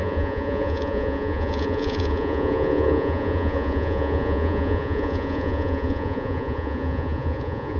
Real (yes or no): no